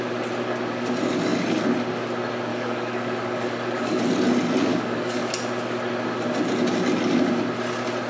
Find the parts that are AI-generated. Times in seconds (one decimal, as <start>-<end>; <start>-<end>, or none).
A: 2.5-4.0; 4.7-5.3